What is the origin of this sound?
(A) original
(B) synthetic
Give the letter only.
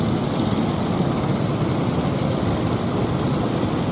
A